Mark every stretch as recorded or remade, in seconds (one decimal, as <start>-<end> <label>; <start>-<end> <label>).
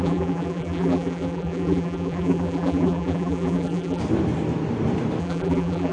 0.0-4.0 remade; 4.0-5.2 recorded; 5.2-5.9 remade